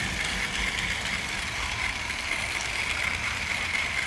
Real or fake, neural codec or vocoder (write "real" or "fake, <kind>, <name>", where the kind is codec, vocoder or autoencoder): real